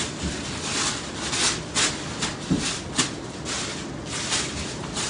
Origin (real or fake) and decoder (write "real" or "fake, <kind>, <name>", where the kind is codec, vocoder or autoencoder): real